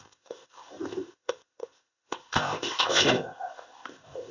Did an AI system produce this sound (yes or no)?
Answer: yes